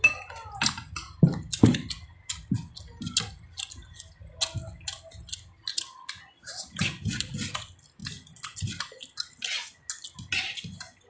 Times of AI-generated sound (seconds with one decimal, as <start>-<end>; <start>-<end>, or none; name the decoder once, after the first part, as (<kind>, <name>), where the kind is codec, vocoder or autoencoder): none